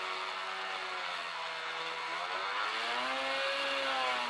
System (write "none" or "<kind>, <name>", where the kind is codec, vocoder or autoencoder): none